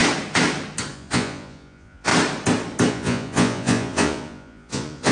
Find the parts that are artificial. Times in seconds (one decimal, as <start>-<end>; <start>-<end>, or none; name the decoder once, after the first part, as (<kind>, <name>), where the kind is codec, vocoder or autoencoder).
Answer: 0.9-2.1 (vocoder, Vocos); 2.9-5.1